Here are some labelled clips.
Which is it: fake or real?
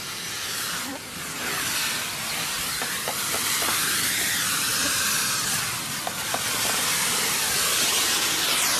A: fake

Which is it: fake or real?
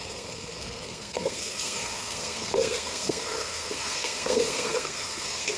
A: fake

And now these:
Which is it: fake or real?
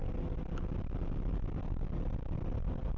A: real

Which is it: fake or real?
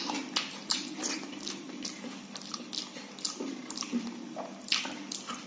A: real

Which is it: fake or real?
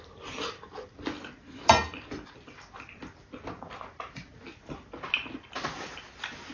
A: real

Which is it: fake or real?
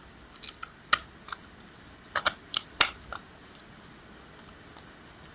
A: real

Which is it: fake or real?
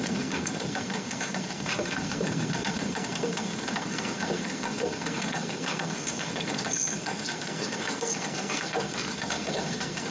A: fake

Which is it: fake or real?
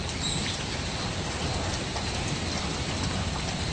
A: real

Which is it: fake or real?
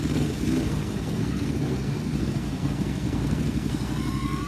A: fake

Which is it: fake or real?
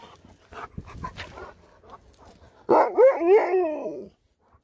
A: real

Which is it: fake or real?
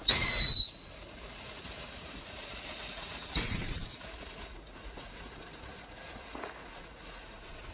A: fake